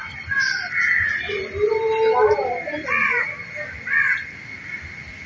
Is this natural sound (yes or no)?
yes